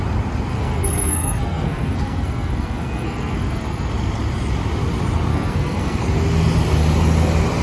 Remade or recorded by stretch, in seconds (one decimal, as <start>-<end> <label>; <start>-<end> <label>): 0.0-0.5 recorded; 0.5-3.9 remade; 3.9-5.3 recorded; 5.3-6.0 remade; 6.0-7.6 recorded